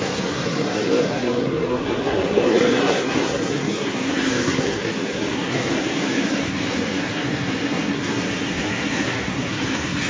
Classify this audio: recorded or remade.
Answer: remade